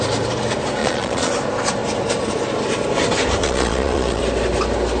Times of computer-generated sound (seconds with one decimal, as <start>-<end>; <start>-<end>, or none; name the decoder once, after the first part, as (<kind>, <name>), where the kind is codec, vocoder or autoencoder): 0.8-1.3 (vocoder, Vocos); 3.4-4.2